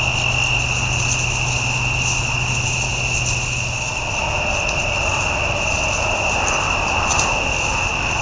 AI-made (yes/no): no